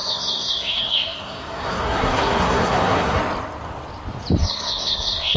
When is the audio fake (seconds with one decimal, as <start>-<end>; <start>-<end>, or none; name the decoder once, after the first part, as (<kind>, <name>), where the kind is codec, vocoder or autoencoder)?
0.0-3.2 (codec, SNAC); 4.4-5.4